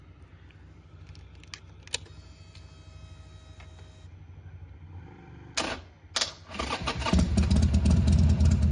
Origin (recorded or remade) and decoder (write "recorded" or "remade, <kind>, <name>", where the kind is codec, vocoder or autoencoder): recorded